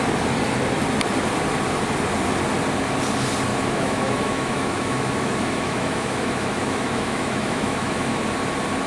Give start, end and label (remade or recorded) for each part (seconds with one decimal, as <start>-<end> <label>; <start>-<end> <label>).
0.0-3.5 recorded; 3.5-8.2 remade; 8.2-8.9 recorded